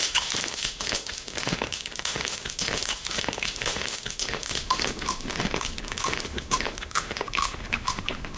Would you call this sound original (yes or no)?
no